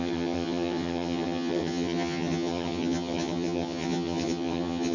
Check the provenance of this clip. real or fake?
fake